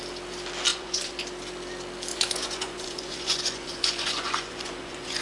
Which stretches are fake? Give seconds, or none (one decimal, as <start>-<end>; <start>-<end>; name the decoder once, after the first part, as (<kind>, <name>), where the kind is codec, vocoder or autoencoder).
0.7-1.2 (vocoder, Vocos); 2.1-5.2